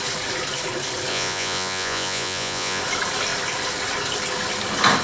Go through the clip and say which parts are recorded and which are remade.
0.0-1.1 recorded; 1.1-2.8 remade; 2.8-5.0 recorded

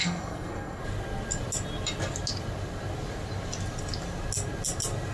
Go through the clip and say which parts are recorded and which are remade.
0.0-0.8 remade; 0.8-5.1 recorded

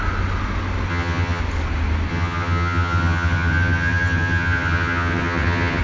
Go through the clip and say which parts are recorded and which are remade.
0.0-0.9 recorded; 0.9-1.4 remade; 1.4-2.1 recorded; 2.1-5.8 remade

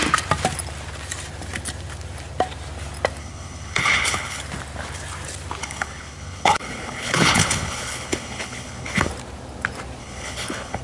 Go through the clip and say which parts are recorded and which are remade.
0.0-3.2 recorded; 3.2-4.4 remade; 4.4-5.6 recorded; 5.6-9.1 remade; 9.1-10.0 recorded; 10.0-10.8 remade